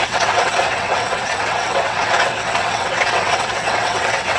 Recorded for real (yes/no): no